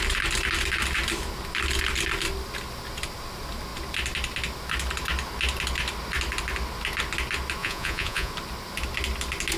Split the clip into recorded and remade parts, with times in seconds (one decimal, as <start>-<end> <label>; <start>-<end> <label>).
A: 0.0-7.6 recorded; 7.6-8.3 remade; 8.3-9.6 recorded